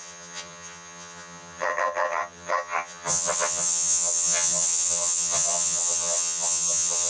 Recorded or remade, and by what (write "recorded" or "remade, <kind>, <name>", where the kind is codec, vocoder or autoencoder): remade, vocoder, HiFi-GAN